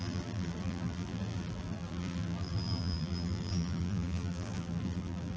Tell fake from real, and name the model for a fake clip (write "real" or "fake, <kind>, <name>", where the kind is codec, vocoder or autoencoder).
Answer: fake, vocoder, BigVGAN v2